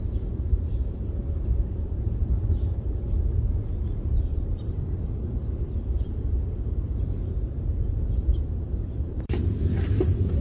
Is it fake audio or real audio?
fake